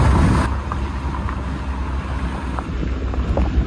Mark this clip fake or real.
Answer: real